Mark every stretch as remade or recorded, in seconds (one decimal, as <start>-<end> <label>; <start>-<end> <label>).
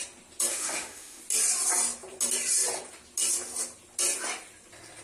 0.0-0.5 recorded; 0.5-1.2 remade; 1.2-5.0 recorded